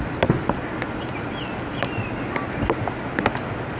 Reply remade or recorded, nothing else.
recorded